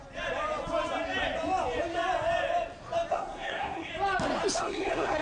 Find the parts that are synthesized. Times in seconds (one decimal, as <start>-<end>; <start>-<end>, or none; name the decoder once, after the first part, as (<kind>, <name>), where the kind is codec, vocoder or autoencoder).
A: 3.1-3.9 (codec, SNAC); 4.6-5.2